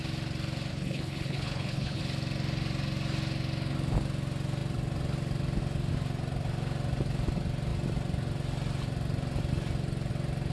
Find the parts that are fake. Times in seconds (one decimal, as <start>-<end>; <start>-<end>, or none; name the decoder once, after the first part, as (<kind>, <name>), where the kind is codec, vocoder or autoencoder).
0.7-2.0 (codec, HILCodec)